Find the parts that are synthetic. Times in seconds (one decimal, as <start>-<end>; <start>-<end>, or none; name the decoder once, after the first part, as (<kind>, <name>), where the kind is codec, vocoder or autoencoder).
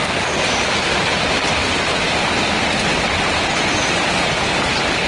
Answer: none